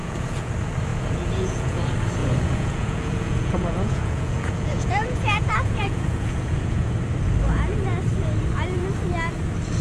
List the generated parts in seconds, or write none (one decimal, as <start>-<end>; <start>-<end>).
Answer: 0.0-0.5; 0.9-1.8; 2.2-6.9